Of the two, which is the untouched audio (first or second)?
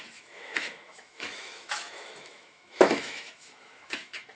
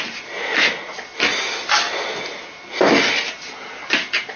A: second